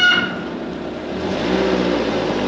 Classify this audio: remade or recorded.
recorded